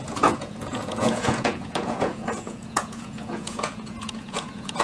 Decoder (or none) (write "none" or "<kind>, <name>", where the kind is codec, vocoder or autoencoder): vocoder, Vocos